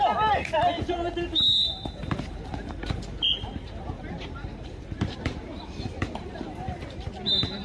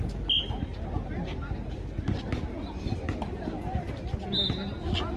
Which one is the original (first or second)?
second